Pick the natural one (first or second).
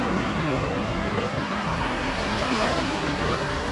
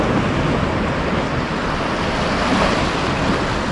second